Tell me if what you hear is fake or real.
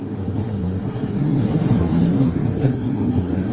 fake